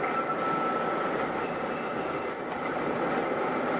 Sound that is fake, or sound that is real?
real